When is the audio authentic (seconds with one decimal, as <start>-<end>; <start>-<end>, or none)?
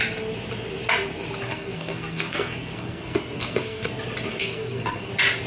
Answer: 0.0-1.5; 3.9-4.3; 5.1-5.5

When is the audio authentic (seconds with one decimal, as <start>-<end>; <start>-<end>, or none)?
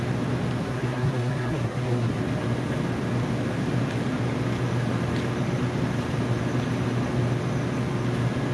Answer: 0.0-0.6; 2.2-8.5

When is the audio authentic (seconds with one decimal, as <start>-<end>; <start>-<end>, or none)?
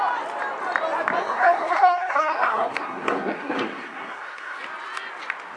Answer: 0.0-1.2; 4.6-5.6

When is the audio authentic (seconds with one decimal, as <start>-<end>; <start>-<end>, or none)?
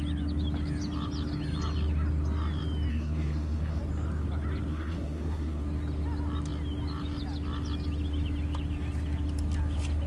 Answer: 0.0-2.9; 3.8-4.7; 5.6-10.1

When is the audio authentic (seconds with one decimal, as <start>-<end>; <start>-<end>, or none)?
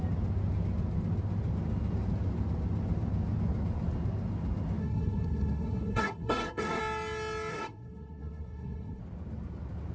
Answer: 0.0-4.8; 6.8-7.5; 9.0-9.9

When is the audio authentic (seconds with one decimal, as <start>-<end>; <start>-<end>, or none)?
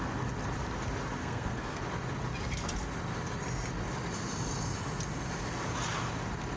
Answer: 0.0-1.2; 1.8-6.6